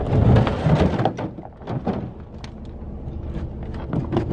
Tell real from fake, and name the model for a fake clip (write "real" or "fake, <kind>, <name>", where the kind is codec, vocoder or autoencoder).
real